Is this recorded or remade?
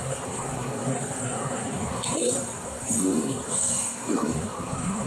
remade